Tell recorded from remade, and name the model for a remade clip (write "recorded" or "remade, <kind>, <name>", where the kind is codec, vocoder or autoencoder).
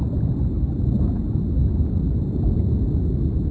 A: recorded